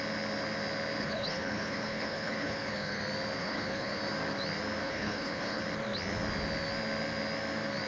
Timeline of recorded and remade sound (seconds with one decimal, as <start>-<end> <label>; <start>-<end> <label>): 0.0-1.0 recorded; 1.0-3.0 remade; 3.0-3.4 recorded; 3.4-4.0 remade; 4.0-4.8 recorded; 4.8-5.6 remade; 5.6-7.9 recorded